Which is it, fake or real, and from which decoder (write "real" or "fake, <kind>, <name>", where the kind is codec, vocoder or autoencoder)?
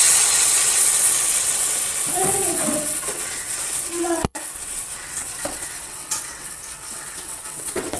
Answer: fake, vocoder, WaveNeXt